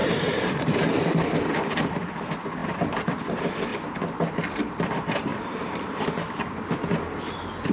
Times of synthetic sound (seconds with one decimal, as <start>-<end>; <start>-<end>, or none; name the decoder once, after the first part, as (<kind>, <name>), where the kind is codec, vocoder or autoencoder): 0.0-1.3 (vocoder, BigVGAN v2); 2.6-3.2; 5.3-6.1